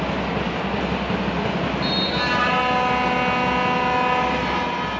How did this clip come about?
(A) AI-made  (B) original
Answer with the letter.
B